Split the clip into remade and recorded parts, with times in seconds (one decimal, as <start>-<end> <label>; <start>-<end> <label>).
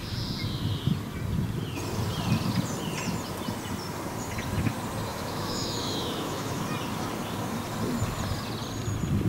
0.0-5.1 recorded; 5.1-6.6 remade; 6.6-9.3 recorded